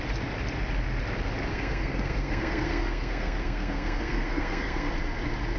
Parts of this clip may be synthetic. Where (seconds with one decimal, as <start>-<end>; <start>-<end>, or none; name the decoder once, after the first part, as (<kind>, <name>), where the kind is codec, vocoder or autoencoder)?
1.5-4.9 (codec, SNAC)